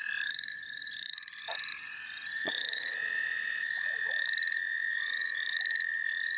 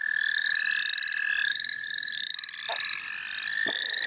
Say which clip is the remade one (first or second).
first